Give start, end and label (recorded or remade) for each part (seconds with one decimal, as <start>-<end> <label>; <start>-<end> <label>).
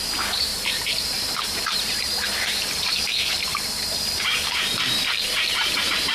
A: 0.0-3.5 remade; 3.5-5.5 recorded; 5.5-6.1 remade